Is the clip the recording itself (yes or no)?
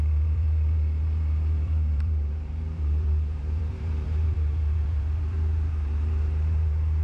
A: no